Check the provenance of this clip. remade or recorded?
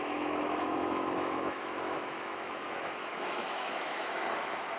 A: remade